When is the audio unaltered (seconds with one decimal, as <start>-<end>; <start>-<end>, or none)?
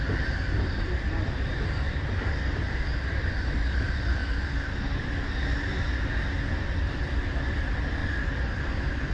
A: 4.2-6.8; 8.0-9.1